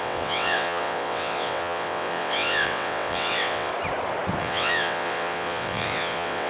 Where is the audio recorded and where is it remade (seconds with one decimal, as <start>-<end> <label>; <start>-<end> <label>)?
0.0-3.7 remade; 3.7-4.4 recorded; 4.4-6.5 remade